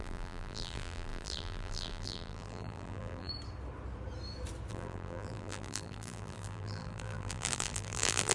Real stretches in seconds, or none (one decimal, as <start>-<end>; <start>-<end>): 3.3-4.7